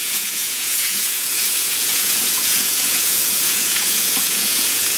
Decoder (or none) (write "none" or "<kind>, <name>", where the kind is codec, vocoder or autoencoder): vocoder, Vocos